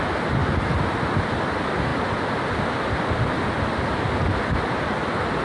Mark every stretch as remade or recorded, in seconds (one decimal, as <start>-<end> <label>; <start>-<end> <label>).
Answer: 0.0-1.9 recorded; 1.9-3.0 remade; 3.0-5.4 recorded